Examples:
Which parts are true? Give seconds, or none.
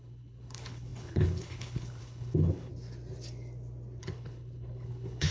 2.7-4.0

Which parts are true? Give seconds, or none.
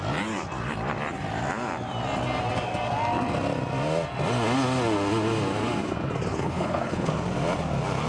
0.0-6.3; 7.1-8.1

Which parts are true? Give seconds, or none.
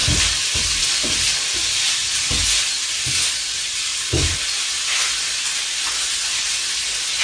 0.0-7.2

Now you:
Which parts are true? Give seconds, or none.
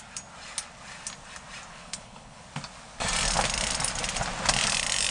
0.0-1.7; 2.4-5.1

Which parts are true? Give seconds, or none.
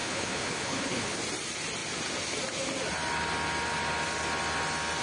1.2-5.0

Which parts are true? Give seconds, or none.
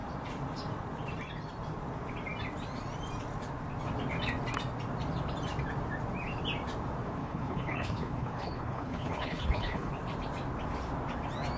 0.0-7.2; 9.9-11.6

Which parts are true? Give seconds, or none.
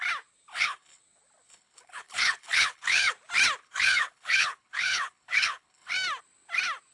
0.0-0.5; 1.0-1.5; 3.1-3.6; 5.9-6.9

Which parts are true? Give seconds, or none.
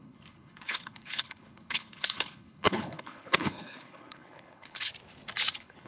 4.9-5.5